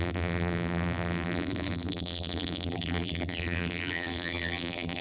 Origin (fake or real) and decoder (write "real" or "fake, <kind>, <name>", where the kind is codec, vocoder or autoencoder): fake, vocoder, BigVGAN v2